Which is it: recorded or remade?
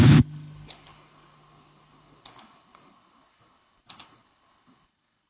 remade